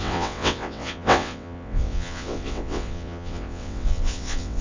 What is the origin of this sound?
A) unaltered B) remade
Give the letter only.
B